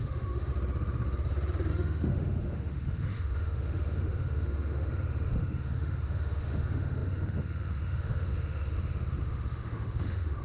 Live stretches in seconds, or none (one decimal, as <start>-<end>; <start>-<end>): 0.5-1.7

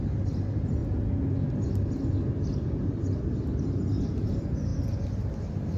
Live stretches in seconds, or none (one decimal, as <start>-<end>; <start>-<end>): 0.0-5.8

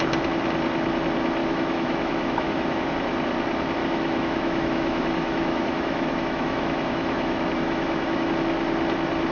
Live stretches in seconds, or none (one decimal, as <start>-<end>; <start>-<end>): 0.0-1.4; 2.9-3.8; 8.3-9.3

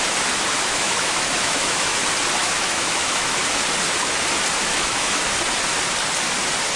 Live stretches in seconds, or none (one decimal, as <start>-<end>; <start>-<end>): 0.0-0.7; 2.0-2.4; 3.4-4.7; 5.3-6.8